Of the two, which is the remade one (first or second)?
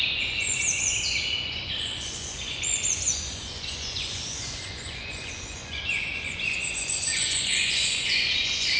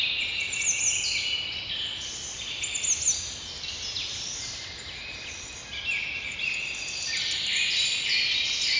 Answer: first